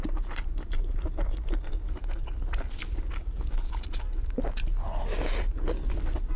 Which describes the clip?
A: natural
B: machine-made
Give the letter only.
A